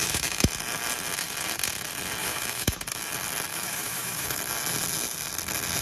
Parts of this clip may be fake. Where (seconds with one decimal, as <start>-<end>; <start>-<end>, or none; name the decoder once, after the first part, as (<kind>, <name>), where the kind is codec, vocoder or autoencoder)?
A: 0.0-0.5 (autoencoder, DAC-VAE); 2.2-2.8; 3.5-4.4

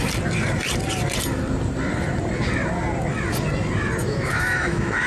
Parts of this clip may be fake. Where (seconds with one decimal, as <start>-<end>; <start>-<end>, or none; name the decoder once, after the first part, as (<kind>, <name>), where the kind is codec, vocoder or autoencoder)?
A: 4.0-5.1 (autoencoder, DAC-VAE)